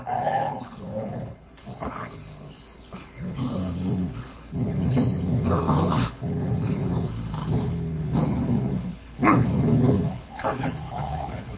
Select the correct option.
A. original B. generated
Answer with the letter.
B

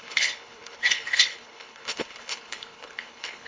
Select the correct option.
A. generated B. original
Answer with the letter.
A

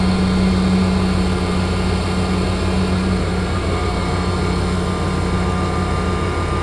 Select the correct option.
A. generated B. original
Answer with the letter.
B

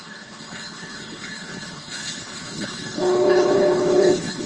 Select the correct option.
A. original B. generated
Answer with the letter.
B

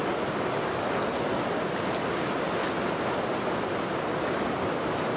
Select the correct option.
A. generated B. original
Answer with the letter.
B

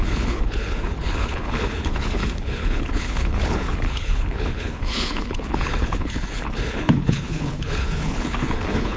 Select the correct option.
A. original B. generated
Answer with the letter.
B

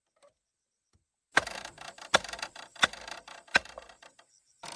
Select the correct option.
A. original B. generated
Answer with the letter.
A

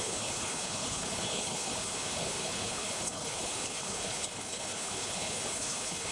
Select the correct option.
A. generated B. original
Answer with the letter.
A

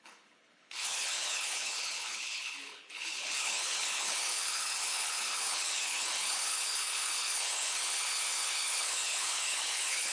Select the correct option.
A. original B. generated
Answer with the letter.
B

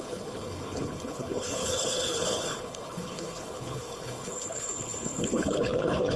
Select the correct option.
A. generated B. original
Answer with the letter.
A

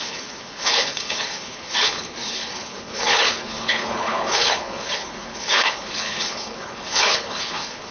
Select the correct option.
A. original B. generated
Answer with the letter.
B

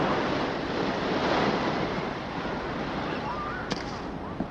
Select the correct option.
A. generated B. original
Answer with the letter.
B